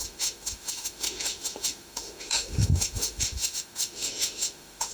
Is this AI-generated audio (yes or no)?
yes